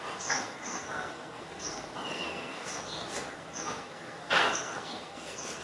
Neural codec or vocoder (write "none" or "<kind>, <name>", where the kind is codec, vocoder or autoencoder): codec, SNAC